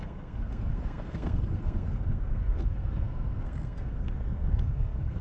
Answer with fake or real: fake